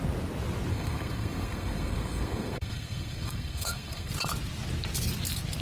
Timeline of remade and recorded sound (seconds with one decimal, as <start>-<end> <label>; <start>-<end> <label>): 0.0-0.7 recorded; 0.7-4.1 remade; 4.1-5.6 recorded